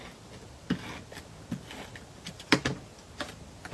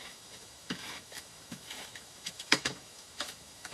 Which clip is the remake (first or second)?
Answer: second